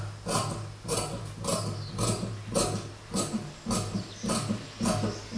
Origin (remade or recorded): recorded